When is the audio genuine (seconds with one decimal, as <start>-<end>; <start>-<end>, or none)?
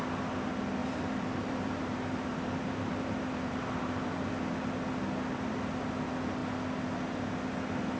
0.0-0.8; 4.3-8.0